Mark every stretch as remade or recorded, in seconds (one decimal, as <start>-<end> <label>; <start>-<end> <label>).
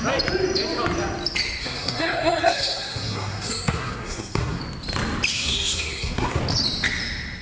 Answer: 0.0-1.6 recorded; 1.6-4.6 remade; 4.6-5.3 recorded; 5.3-6.4 remade; 6.4-7.4 recorded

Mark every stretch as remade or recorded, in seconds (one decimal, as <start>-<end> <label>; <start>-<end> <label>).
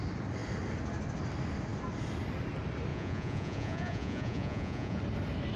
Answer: 0.0-2.9 recorded; 2.9-5.0 remade; 5.0-5.6 recorded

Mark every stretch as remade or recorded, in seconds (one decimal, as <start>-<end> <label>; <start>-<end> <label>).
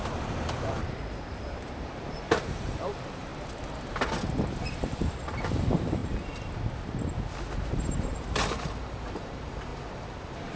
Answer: 0.0-3.3 remade; 3.3-5.6 recorded; 5.6-6.0 remade; 6.0-7.7 recorded; 7.7-9.7 remade; 9.7-10.6 recorded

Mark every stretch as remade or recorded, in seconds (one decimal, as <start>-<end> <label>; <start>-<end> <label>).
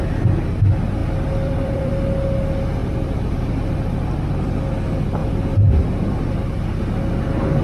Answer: 0.0-1.0 recorded; 1.0-1.9 remade; 1.9-2.8 recorded; 2.8-3.3 remade; 3.3-5.2 recorded; 5.2-5.7 remade; 5.7-7.6 recorded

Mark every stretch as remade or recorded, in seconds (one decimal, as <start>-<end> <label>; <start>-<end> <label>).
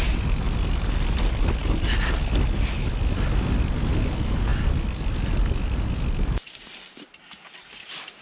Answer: 0.0-8.2 recorded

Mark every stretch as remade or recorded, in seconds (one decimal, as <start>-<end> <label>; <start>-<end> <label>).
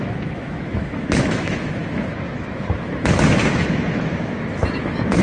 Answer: 0.0-5.2 remade